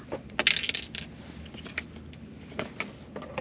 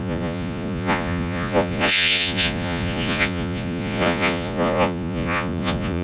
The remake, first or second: second